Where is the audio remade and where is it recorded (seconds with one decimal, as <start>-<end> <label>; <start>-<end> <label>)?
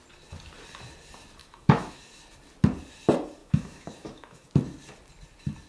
0.0-1.4 recorded; 1.4-2.0 remade; 2.0-3.4 recorded; 3.4-4.5 remade; 4.5-5.7 recorded